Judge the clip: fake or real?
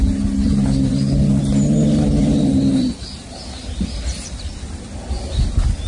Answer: real